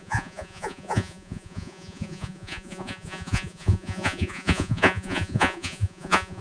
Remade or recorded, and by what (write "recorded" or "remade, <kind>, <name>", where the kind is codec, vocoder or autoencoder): remade, vocoder, Vocos